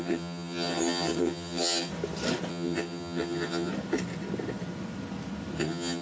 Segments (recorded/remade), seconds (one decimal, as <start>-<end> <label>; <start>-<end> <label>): 0.0-1.9 remade; 1.9-2.5 recorded; 2.5-3.7 remade; 3.7-5.6 recorded; 5.6-6.0 remade